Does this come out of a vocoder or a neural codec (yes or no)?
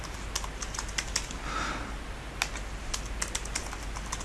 no